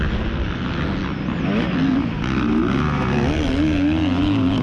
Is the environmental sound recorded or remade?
recorded